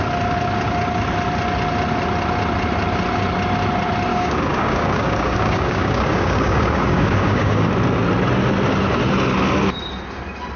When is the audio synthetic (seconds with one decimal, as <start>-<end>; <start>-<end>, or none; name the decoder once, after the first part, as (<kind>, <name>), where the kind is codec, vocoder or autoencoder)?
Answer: 4.1-7.7 (codec, DAC)